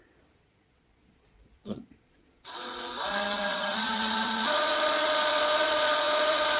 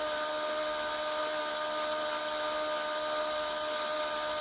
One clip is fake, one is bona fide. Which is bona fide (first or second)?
second